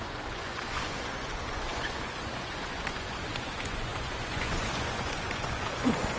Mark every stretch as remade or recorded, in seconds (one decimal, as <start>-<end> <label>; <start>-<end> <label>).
0.0-6.2 remade

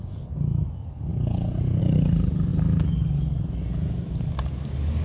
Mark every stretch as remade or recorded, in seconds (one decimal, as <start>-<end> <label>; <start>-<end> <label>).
0.0-1.1 recorded; 1.1-1.8 remade; 1.8-5.0 recorded

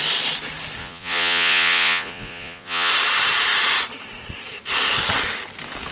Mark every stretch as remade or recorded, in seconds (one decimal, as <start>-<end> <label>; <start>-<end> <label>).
0.0-0.8 recorded; 0.8-2.9 remade; 2.9-5.9 recorded